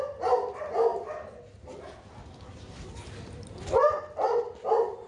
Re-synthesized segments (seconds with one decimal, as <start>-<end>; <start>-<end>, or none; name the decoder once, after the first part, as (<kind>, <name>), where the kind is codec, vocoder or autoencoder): none